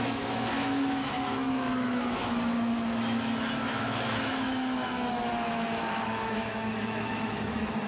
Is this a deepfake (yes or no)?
yes